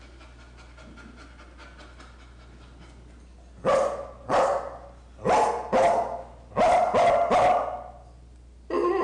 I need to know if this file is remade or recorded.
recorded